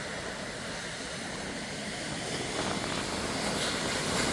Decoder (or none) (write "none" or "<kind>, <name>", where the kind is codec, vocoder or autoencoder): none